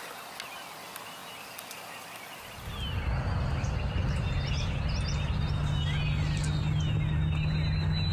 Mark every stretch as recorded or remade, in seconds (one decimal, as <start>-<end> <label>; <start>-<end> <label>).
0.0-8.1 recorded